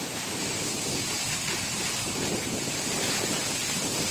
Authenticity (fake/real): fake